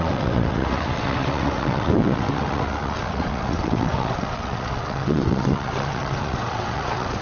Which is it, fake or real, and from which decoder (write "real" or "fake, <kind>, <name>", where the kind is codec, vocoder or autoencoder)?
fake, vocoder, WaveNeXt